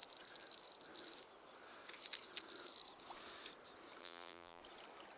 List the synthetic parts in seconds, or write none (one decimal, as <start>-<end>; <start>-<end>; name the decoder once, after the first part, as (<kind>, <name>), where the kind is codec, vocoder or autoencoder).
4.0-4.6 (vocoder, BigVGAN v2)